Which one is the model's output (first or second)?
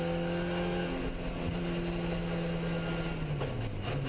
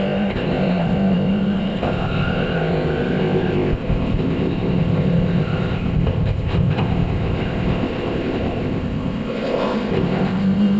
second